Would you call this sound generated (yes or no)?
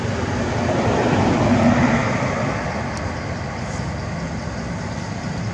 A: no